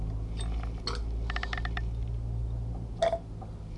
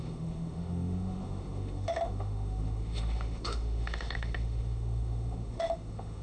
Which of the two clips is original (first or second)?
first